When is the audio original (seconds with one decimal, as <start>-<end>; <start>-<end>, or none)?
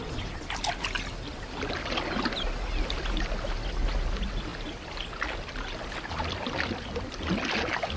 0.0-8.0